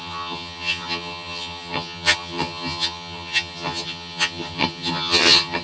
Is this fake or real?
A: fake